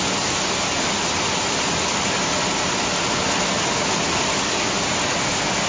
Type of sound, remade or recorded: recorded